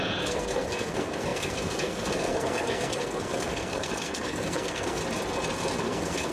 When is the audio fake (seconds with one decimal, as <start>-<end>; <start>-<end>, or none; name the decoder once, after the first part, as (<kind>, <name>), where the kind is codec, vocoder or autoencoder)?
0.0-5.0 (codec, SNAC); 5.8-6.3